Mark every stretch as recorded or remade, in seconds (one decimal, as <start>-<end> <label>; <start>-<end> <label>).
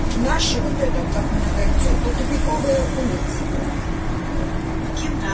0.0-3.2 recorded; 3.2-3.7 remade; 3.7-5.3 recorded